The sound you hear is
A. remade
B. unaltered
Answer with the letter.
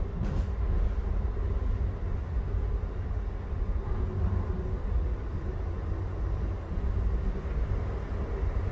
B